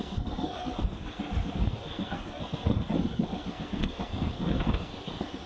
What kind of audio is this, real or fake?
fake